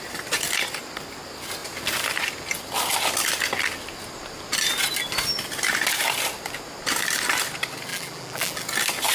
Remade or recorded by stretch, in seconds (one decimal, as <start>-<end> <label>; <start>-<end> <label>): 0.0-7.9 recorded; 7.9-8.6 remade; 8.6-9.1 recorded